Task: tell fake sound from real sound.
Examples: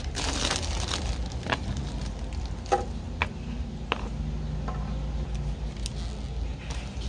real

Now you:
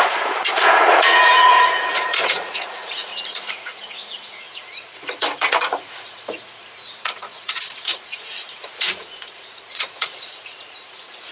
fake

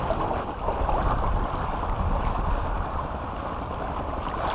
real